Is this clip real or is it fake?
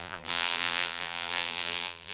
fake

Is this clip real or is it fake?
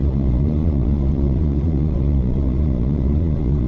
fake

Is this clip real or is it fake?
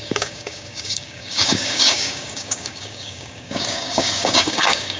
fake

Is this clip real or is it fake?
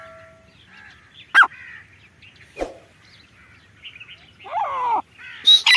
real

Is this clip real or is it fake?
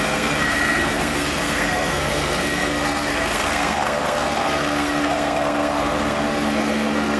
fake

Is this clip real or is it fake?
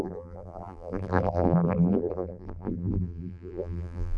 fake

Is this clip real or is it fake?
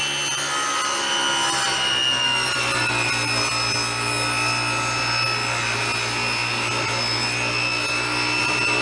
real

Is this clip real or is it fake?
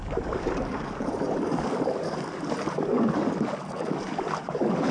fake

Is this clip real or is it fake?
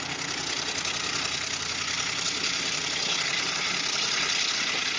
real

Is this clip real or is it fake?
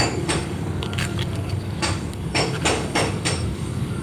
fake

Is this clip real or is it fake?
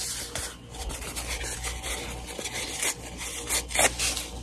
real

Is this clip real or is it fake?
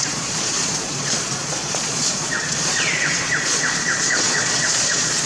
fake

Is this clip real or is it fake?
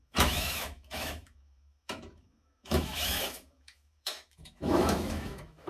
fake